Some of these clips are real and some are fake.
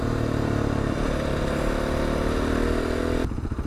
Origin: real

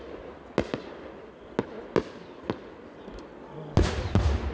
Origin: real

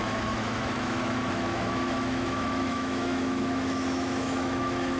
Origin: fake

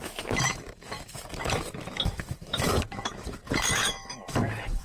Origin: fake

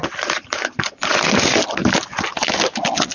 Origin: real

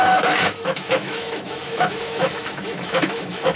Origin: fake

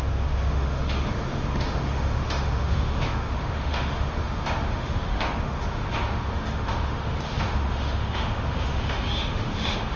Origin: fake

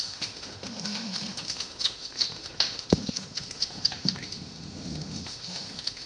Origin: fake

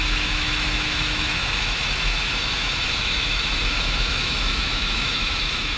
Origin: fake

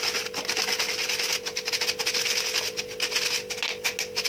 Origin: real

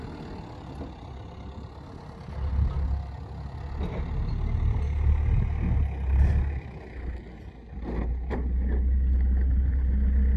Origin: real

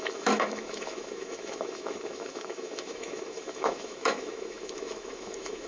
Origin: fake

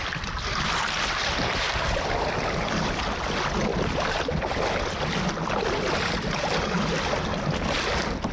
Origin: real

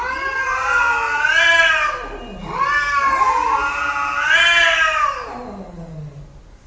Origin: real